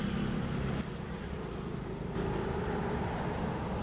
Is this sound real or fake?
real